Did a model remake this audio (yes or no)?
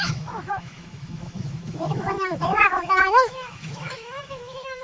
yes